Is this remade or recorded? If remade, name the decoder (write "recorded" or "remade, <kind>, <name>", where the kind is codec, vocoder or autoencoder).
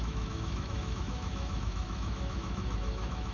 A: remade, autoencoder, DAC-VAE